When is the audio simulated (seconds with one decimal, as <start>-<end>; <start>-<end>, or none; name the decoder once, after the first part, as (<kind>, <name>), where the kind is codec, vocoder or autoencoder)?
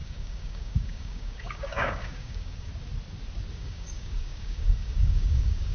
0.0-2.7 (codec, DAC); 3.5-5.7